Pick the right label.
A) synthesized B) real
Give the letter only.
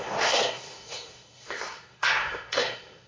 A